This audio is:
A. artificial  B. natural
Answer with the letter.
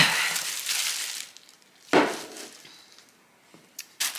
B